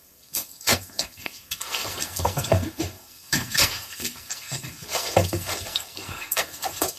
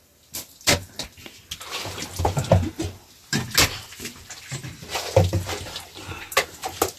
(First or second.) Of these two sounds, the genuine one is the second